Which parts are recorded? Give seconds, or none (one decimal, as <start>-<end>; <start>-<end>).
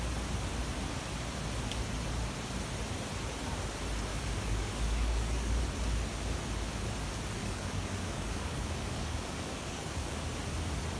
0.0-4.1; 5.6-7.4; 10.2-11.0